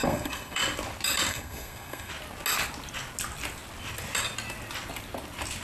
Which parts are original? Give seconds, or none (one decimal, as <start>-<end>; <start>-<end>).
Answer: 0.6-1.3; 2.1-5.6